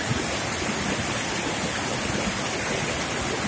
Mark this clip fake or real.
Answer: real